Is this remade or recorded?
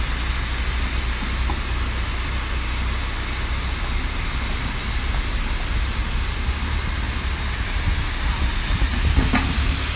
recorded